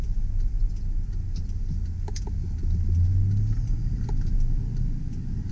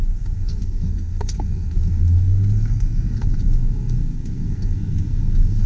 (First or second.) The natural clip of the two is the first